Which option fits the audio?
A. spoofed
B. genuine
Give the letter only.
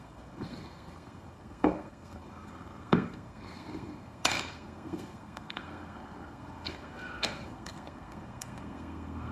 A